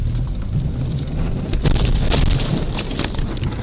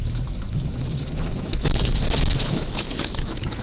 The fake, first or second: second